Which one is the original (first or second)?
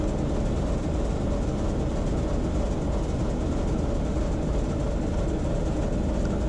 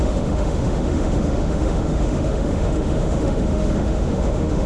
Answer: first